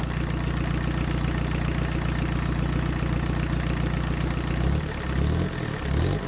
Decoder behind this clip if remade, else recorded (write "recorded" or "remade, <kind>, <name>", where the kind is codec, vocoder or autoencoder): recorded